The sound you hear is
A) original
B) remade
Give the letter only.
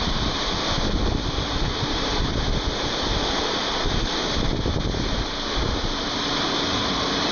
B